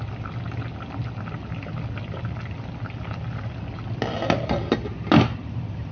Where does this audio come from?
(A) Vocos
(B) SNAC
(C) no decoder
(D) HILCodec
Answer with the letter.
C